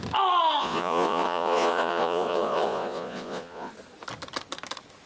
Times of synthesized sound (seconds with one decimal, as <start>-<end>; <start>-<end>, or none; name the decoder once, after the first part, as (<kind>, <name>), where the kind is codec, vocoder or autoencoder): 0.6-3.7 (vocoder, Vocos)